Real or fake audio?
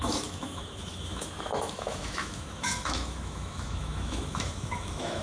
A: fake